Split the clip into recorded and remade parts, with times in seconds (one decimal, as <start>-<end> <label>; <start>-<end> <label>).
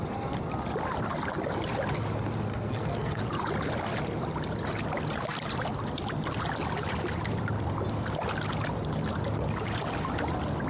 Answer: 0.0-2.5 recorded; 2.5-3.2 remade; 3.2-10.7 recorded